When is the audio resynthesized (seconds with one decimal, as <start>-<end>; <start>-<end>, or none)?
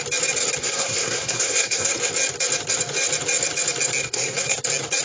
0.6-2.1; 4.0-4.6